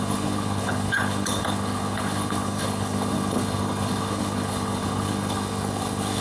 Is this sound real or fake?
fake